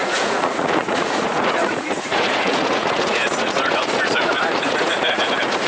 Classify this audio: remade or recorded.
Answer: remade